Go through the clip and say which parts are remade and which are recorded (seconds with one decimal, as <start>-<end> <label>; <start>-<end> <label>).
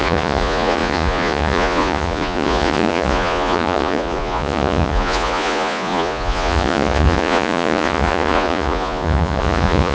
0.0-9.9 remade